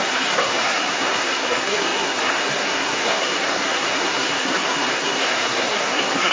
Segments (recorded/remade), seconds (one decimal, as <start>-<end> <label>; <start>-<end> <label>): 0.0-6.3 remade